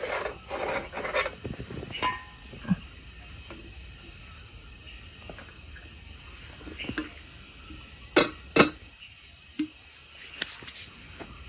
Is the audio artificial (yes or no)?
no